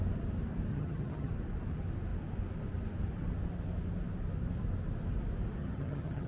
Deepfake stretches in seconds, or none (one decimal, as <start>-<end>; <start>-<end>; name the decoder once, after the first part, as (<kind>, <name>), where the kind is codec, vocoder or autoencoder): 0.7-1.3 (vocoder, HiFi-GAN); 5.6-6.3